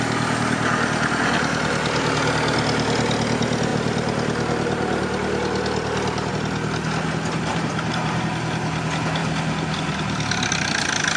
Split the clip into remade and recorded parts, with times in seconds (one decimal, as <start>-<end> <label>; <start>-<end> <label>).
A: 0.0-7.5 recorded; 7.5-8.2 remade; 8.2-11.2 recorded